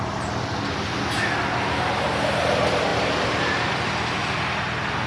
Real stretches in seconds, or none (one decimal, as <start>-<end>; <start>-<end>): 0.0-5.1